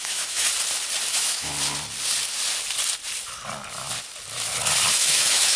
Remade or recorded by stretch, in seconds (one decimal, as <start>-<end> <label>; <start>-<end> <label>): 0.0-0.5 remade; 0.5-1.1 recorded; 1.1-1.5 remade; 1.5-4.9 recorded; 4.9-5.6 remade